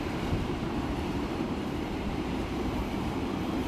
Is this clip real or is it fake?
fake